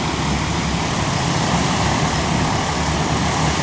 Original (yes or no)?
yes